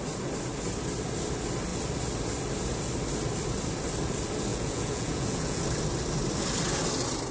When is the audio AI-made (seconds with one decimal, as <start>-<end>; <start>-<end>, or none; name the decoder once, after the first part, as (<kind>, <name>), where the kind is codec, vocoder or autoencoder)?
4.5-5.6 (vocoder, Vocos)